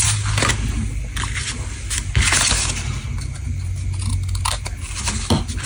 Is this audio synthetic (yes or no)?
no